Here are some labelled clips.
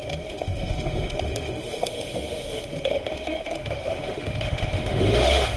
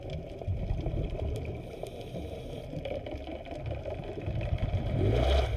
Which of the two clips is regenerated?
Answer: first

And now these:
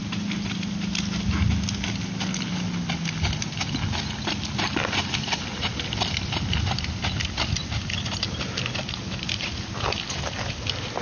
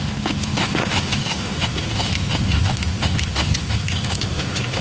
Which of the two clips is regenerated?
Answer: second